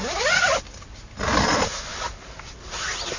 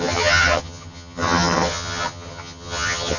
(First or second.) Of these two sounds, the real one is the first